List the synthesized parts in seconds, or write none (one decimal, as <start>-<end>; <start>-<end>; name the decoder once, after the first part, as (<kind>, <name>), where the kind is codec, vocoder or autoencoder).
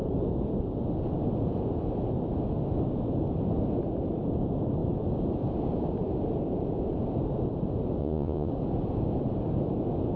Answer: 8.0-8.5 (vocoder, Vocos)